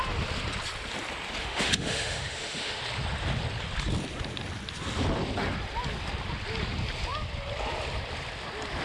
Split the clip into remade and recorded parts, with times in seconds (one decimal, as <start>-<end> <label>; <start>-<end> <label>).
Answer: 0.0-1.4 recorded; 1.4-2.8 remade; 2.8-8.8 recorded